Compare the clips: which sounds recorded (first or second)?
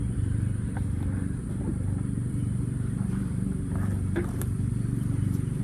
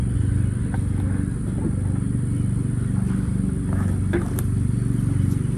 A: second